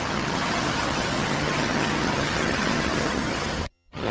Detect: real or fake fake